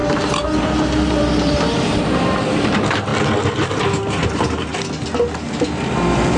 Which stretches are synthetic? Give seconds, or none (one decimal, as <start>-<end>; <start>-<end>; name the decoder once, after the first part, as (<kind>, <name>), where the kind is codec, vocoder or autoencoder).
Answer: 1.2-3.1 (vocoder, BigVGAN v2); 3.7-4.7